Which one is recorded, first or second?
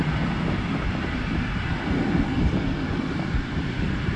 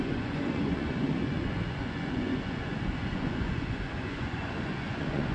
first